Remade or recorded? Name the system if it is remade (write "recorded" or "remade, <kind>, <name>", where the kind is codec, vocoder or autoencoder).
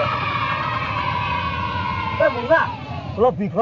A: remade, vocoder, Vocos